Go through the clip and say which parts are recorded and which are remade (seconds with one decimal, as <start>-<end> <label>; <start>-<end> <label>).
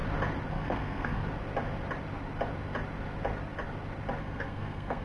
0.0-0.5 recorded; 0.5-1.2 remade; 1.2-4.2 recorded; 4.2-5.0 remade